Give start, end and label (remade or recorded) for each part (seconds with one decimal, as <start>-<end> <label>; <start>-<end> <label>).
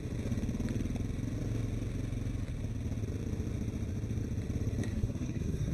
0.0-4.8 recorded; 4.8-5.7 remade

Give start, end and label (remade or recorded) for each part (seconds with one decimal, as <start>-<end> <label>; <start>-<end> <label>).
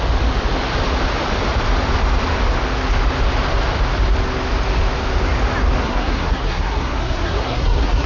0.0-5.8 recorded; 5.8-8.1 remade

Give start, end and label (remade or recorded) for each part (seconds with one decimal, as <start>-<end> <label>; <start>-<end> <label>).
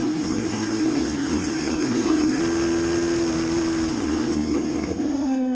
0.0-2.4 remade; 2.4-3.9 recorded; 3.9-5.5 remade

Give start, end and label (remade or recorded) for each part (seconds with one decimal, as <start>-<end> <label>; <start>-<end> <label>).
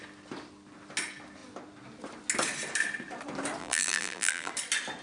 0.0-3.6 recorded; 3.6-4.5 remade; 4.5-5.0 recorded